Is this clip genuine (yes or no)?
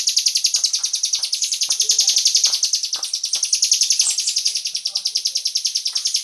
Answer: yes